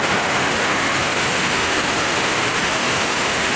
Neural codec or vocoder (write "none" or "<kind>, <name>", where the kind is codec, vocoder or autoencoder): autoencoder, DAC-VAE